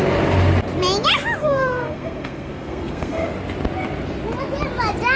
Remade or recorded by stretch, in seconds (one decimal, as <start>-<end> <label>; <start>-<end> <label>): 0.0-1.4 recorded; 1.4-3.3 remade; 3.3-5.2 recorded